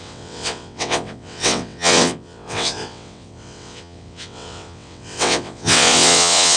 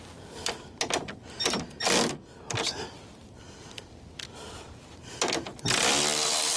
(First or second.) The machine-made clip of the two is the first